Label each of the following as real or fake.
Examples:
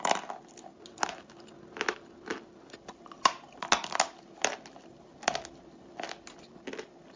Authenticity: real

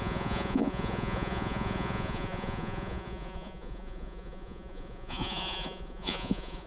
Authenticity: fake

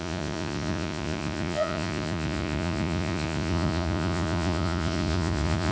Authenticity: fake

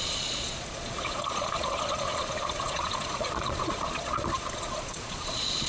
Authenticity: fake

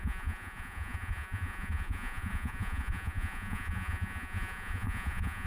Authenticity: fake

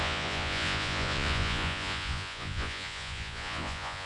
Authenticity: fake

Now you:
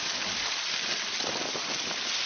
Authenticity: real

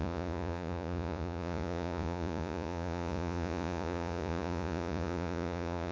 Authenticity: fake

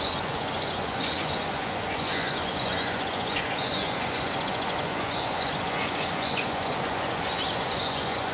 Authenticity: fake